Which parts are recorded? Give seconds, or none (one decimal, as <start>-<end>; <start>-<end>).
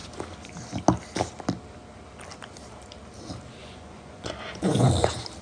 0.0-3.6; 4.9-5.4